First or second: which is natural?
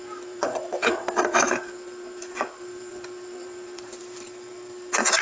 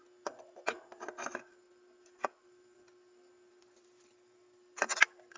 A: second